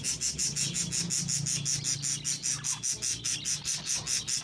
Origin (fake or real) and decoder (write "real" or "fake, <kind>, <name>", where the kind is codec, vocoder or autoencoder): real